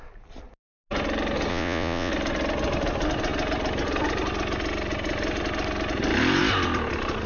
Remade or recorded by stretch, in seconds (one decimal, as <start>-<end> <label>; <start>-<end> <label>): 0.0-1.5 recorded; 1.5-2.1 remade; 2.1-7.3 recorded